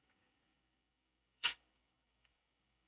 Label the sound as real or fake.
fake